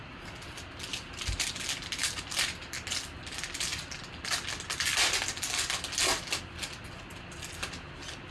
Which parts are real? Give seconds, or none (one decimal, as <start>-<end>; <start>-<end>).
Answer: 0.0-0.9; 1.5-2.0; 2.6-8.3